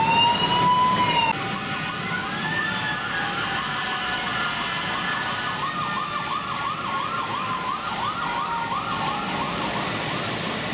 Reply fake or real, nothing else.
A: real